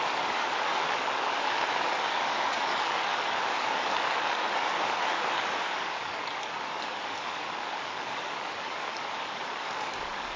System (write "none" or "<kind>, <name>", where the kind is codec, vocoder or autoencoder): codec, DAC